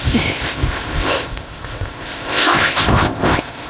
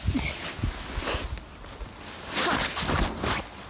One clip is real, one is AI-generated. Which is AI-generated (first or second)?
first